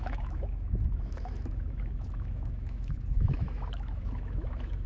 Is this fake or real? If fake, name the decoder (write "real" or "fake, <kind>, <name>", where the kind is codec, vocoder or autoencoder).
fake, autoencoder, DAC-VAE